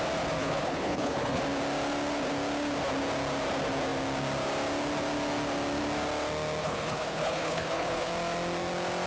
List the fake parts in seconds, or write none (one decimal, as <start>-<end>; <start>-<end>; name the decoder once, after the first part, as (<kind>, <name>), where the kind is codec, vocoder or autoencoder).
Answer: 0.4-1.4 (codec, HILCodec); 6.6-8.1